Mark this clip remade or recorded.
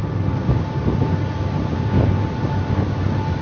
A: recorded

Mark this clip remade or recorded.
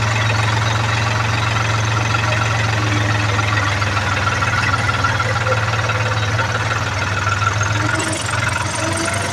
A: recorded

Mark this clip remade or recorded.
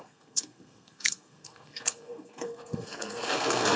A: remade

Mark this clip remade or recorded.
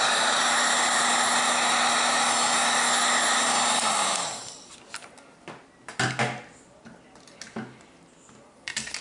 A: recorded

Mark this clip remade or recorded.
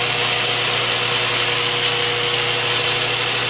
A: recorded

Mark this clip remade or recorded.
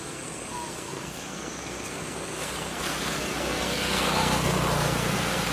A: remade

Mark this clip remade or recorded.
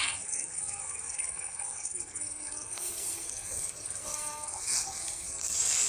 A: remade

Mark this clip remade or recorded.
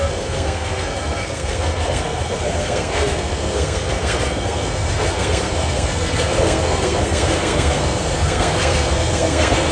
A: remade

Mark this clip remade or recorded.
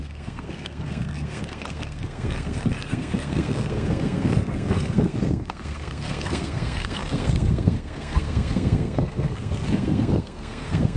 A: remade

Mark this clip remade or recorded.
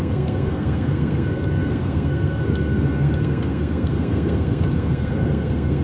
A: remade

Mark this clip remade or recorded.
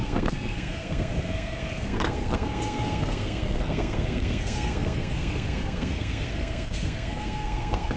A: remade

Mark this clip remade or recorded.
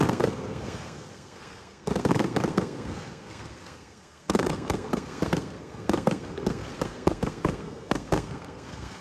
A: remade